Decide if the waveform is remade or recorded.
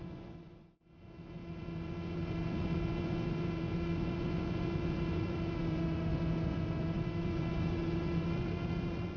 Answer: remade